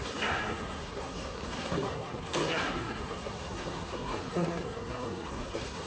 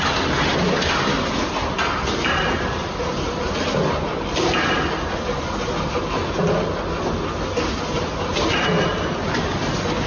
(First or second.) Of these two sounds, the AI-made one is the first